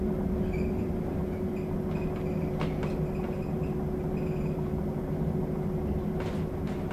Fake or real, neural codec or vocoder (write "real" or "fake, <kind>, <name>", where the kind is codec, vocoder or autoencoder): real